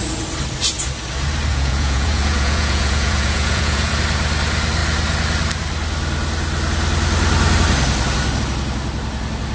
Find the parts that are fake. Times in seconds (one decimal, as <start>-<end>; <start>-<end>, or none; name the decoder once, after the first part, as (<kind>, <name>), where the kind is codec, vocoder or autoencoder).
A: 1.5-3.9 (vocoder, Vocos)